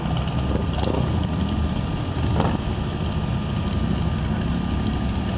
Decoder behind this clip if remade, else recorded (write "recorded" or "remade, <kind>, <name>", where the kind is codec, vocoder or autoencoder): recorded